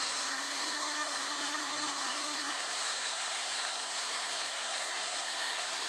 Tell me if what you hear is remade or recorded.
remade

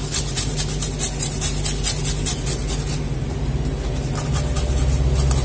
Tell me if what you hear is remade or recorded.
recorded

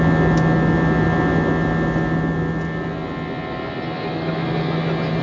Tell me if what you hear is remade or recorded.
recorded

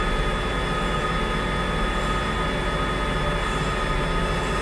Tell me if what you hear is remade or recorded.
recorded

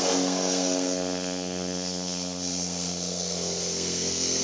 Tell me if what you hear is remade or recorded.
remade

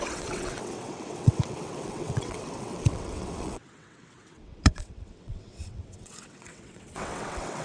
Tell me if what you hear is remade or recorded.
remade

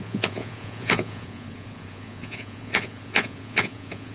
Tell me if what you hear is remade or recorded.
remade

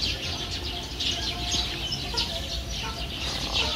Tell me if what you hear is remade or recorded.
recorded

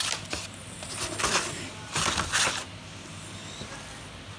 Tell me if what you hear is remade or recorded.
recorded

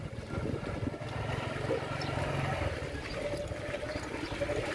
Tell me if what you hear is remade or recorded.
recorded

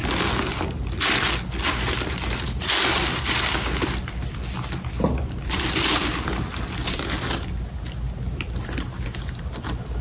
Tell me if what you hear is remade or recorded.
recorded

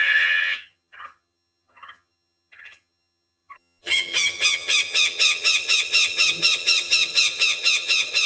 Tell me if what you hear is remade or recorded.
remade